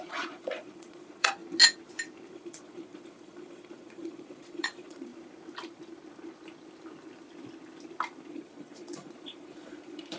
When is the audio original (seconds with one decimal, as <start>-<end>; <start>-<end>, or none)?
1.4-2.3; 5.1-8.3